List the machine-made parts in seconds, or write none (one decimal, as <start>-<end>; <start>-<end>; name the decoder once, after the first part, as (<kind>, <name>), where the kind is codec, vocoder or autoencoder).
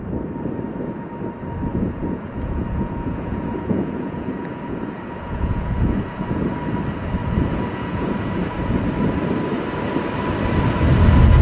1.7-6.4 (vocoder, Vocos); 7.2-8.8